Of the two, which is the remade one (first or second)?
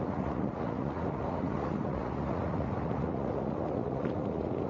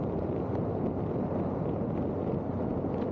first